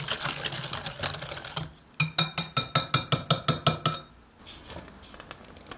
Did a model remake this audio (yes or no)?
no